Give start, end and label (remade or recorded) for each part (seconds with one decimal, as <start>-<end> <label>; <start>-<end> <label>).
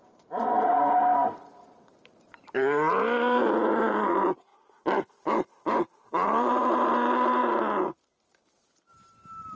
0.0-4.5 remade; 4.5-5.1 recorded; 5.1-7.5 remade; 7.5-8.4 recorded; 8.4-9.6 remade